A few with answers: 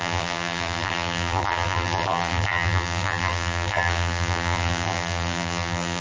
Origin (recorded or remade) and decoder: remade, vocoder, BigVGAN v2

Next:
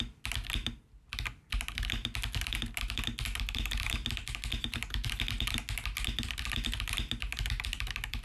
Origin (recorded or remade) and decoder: recorded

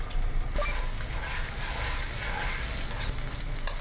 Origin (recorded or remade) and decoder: recorded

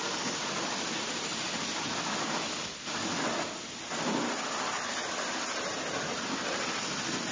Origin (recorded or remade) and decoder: recorded